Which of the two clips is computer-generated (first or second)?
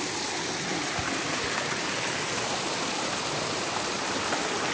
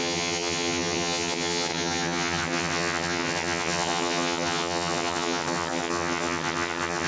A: second